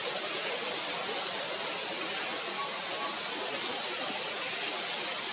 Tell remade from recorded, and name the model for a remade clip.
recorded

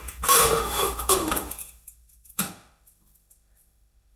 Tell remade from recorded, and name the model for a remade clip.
remade, autoencoder, DAC-VAE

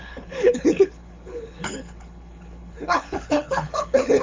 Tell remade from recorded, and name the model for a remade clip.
remade, codec, HILCodec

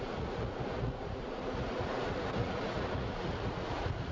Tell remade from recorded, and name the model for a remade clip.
remade, vocoder, Vocos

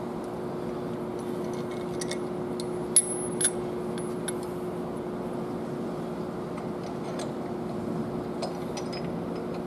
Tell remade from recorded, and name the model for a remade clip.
recorded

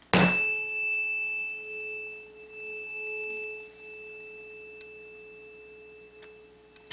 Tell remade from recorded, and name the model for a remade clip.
recorded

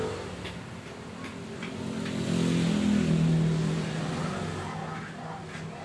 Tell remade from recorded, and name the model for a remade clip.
recorded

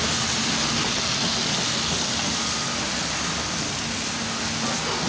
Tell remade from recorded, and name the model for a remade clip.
recorded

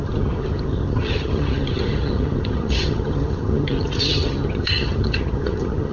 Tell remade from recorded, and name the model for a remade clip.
remade, vocoder, HiFi-GAN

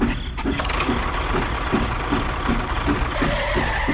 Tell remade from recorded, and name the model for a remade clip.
recorded